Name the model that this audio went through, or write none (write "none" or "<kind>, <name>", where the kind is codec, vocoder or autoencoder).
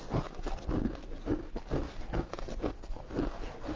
none